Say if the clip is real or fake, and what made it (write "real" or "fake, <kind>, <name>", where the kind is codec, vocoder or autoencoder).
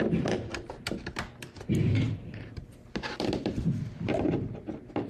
real